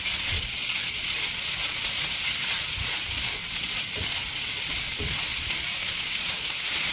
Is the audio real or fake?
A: fake